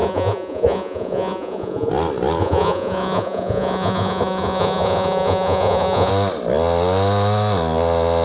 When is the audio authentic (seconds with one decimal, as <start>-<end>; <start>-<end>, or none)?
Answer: 1.9-2.4; 6.1-8.2